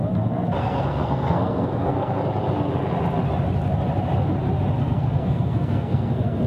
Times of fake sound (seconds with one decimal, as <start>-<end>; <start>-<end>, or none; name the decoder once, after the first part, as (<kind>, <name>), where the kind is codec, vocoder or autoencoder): 0.6-2.2 (codec, SNAC); 4.8-6.5